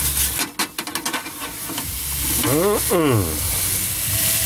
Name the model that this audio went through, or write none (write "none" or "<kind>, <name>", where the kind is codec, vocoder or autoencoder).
none